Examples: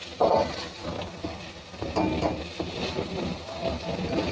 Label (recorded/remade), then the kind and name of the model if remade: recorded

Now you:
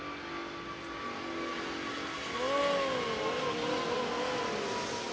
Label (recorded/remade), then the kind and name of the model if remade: recorded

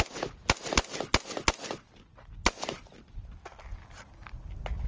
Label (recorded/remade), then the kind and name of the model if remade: recorded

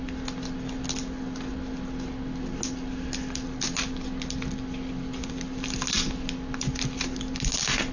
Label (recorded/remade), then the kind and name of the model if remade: recorded